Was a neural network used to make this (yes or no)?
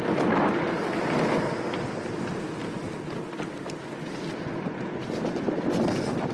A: no